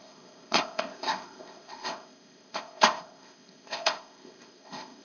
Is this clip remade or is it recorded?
remade